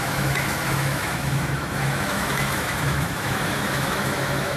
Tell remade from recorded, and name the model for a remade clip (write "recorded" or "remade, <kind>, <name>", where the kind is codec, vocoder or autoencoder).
remade, autoencoder, DAC-VAE